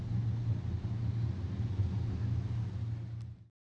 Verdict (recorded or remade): recorded